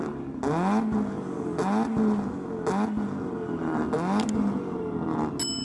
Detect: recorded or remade recorded